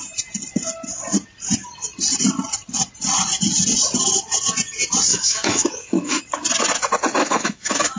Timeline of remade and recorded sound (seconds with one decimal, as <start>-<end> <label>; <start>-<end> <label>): 0.0-5.1 recorded; 5.1-6.2 remade; 6.2-7.2 recorded; 7.2-8.0 remade